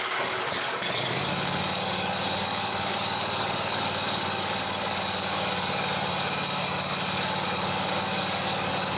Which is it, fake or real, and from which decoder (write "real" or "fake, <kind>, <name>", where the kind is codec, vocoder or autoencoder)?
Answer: fake, codec, DAC